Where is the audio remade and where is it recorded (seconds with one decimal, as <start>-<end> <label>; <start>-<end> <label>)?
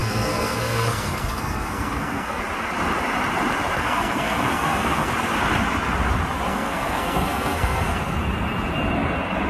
0.0-2.4 remade; 2.4-3.8 recorded; 3.8-5.1 remade; 5.1-6.5 recorded; 6.5-8.0 remade; 8.0-9.5 recorded